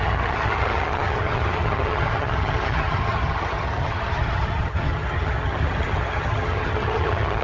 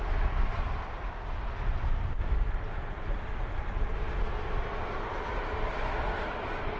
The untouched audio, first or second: second